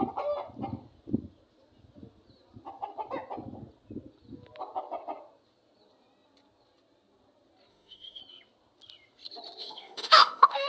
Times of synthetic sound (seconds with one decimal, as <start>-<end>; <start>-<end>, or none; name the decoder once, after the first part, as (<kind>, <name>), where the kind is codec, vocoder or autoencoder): 7.7-8.2 (autoencoder, DAC-VAE); 9.6-10.7